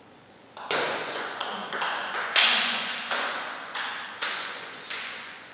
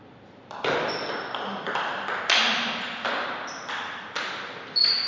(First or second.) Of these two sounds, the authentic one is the second